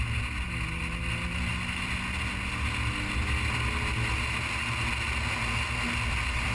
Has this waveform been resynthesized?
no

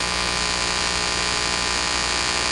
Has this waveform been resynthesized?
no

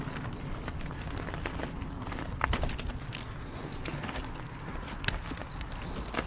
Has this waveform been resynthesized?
no